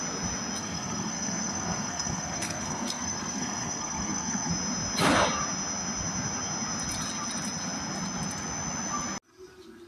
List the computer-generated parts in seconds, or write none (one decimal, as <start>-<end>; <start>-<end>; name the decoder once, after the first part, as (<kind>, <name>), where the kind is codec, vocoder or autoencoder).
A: 0.6-4.5 (codec, SNAC)